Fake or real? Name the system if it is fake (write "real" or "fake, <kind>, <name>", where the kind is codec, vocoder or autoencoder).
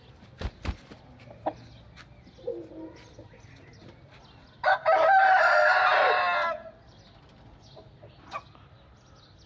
real